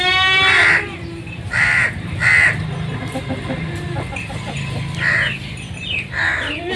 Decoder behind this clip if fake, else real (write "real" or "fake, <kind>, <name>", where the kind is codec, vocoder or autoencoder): real